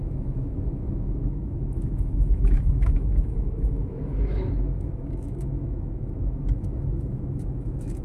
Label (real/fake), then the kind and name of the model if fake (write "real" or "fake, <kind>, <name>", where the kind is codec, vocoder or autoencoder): fake, autoencoder, DAC-VAE